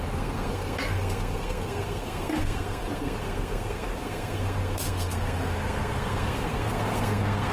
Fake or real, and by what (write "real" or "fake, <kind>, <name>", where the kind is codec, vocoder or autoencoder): fake, codec, SNAC